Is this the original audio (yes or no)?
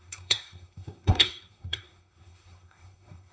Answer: no